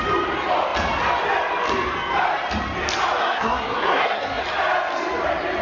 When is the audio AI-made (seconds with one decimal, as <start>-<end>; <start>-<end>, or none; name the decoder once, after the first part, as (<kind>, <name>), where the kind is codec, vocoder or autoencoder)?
3.2-4.4 (codec, SNAC)